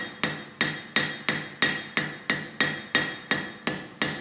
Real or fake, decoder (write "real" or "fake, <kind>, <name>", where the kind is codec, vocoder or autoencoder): real